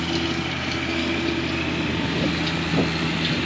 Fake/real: real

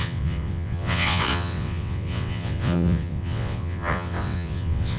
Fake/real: fake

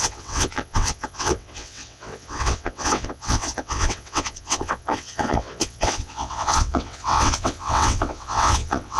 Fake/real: fake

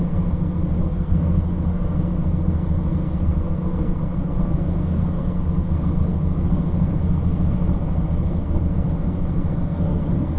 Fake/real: fake